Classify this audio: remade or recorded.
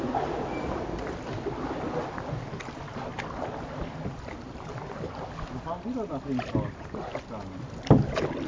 recorded